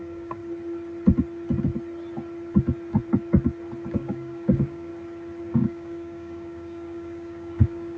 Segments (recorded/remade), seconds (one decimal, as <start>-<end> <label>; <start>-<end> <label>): 0.0-0.4 remade; 0.4-3.9 recorded; 3.9-4.9 remade; 4.9-5.4 recorded; 5.4-8.0 remade